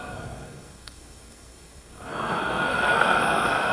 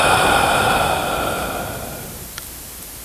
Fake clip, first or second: first